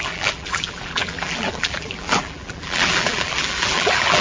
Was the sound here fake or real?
fake